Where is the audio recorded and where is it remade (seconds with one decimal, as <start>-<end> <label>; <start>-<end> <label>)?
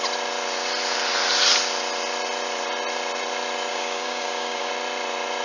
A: 0.0-3.7 recorded; 3.7-4.7 remade; 4.7-5.4 recorded